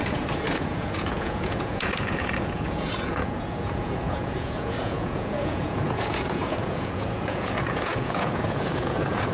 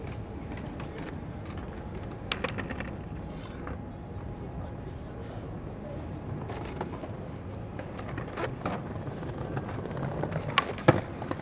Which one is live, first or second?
second